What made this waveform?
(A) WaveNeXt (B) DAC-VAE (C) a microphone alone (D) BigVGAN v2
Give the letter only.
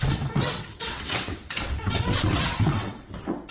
A